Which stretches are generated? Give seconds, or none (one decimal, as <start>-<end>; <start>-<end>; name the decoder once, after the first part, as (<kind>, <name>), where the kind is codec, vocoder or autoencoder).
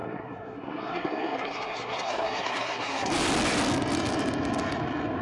0.0-3.1 (codec, SNAC)